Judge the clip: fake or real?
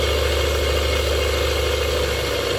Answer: real